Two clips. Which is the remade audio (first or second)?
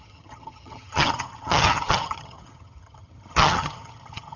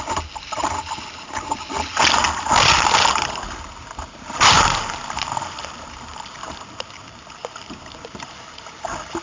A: first